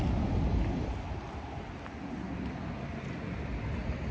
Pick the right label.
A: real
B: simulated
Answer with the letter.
A